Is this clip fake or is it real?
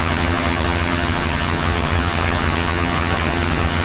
fake